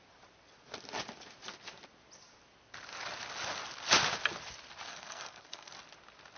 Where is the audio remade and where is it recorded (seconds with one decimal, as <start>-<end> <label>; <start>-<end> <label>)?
0.0-4.9 recorded; 4.9-5.7 remade; 5.7-6.4 recorded